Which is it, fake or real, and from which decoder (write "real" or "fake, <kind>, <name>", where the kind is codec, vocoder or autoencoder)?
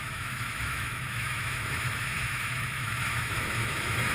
fake, autoencoder, DAC-VAE